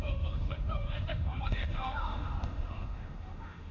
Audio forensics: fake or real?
fake